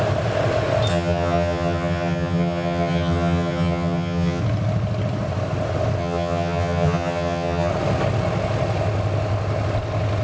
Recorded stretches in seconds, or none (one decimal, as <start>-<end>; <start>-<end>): 0.0-0.9; 4.4-6.0; 7.7-10.2